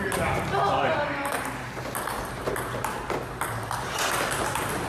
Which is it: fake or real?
real